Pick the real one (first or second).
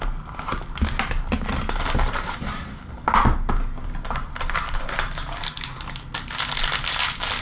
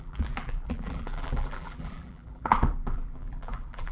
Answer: first